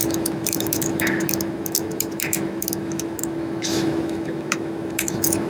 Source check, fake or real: fake